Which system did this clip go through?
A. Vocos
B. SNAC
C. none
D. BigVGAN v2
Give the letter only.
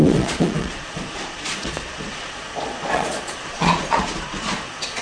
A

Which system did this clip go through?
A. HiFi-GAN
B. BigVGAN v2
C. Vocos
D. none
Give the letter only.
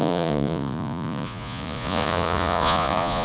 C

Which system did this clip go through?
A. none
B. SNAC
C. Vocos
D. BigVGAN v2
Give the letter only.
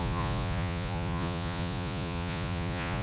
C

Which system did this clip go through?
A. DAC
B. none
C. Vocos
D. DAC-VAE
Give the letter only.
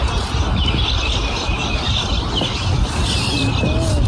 B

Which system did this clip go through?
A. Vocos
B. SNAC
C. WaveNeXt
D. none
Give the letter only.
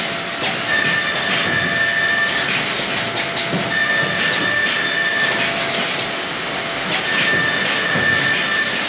D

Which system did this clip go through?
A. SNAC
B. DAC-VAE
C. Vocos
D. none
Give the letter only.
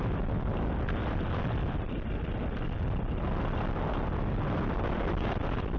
D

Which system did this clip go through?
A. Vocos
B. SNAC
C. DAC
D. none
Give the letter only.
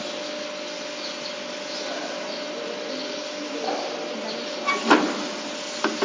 D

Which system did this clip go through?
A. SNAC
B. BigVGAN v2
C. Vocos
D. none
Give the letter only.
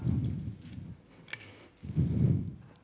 D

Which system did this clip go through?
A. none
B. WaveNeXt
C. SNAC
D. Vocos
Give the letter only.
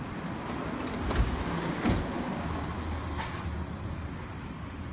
A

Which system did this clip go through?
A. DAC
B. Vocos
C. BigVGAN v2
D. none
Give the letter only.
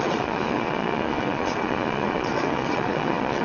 B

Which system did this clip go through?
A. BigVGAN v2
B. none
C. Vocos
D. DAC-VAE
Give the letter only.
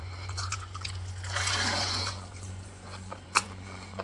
C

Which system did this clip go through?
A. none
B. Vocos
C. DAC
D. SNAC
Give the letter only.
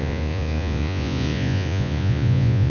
B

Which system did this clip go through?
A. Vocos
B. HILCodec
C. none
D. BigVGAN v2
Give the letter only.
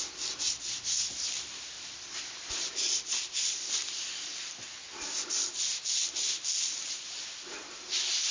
C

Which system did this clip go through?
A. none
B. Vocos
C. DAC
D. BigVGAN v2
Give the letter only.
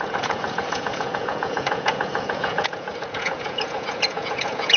B